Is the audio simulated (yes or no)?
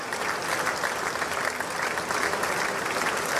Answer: no